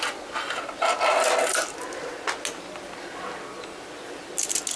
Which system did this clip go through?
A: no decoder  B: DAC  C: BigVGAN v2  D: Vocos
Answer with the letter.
A